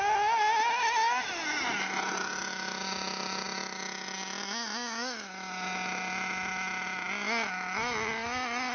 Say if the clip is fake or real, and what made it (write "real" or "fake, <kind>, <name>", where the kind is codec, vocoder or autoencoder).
real